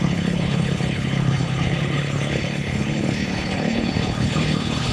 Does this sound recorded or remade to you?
remade